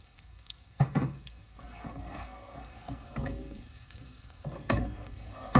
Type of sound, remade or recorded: remade